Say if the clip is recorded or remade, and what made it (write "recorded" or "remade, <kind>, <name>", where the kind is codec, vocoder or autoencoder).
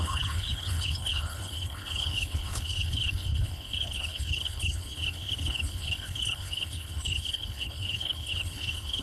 remade, codec, HILCodec